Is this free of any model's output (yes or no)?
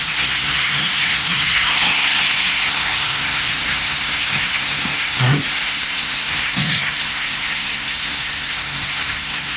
no